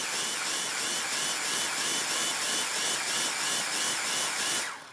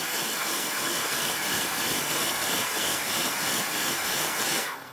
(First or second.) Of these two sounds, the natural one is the first